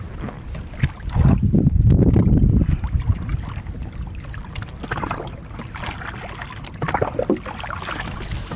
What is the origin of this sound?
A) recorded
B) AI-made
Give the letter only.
A